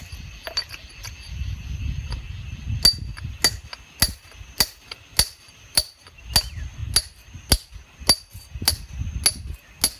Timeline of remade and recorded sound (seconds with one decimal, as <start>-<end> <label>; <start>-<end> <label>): 0.0-10.0 recorded